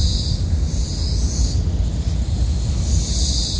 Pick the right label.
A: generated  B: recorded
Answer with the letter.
B